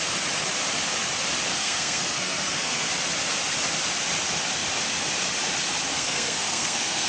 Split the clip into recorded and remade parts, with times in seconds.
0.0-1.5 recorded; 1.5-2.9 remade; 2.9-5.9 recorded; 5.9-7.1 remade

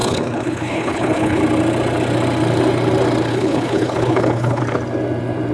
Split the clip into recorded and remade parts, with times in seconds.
0.0-1.4 remade; 1.4-3.3 recorded; 3.3-4.6 remade; 4.6-5.5 recorded

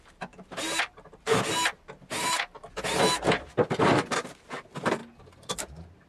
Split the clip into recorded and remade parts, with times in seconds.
0.0-1.3 remade; 1.3-3.7 recorded; 3.7-5.0 remade; 5.0-6.1 recorded

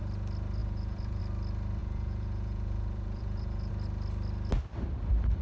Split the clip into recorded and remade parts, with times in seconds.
0.0-0.6 recorded; 0.6-1.2 remade; 1.2-1.8 recorded; 1.8-3.7 remade; 3.7-5.4 recorded

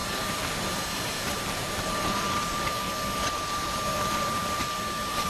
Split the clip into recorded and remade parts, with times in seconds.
0.0-2.8 remade; 2.8-3.5 recorded; 3.5-5.3 remade

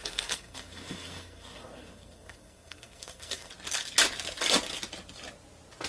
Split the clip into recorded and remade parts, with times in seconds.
0.0-3.5 remade; 3.5-5.9 recorded